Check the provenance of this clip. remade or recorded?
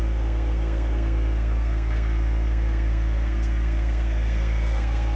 remade